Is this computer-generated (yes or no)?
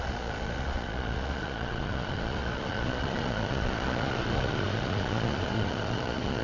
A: yes